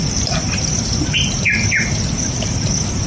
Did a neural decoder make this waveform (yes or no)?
no